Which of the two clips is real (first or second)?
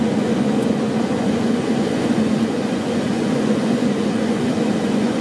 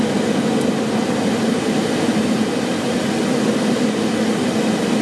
second